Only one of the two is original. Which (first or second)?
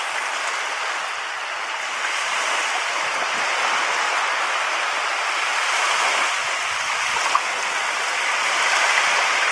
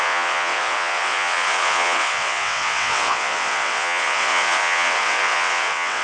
first